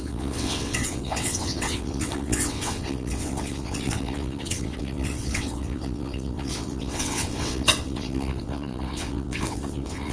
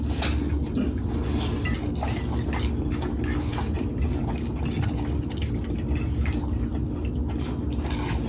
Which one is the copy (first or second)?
first